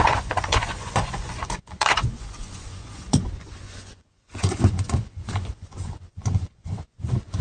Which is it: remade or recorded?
remade